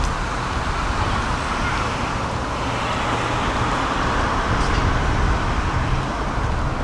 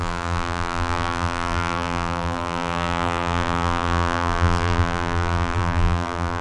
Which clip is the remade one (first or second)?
second